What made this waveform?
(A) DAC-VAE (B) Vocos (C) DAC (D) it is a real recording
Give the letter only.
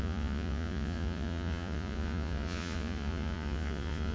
B